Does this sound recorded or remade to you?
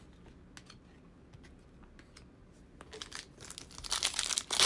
recorded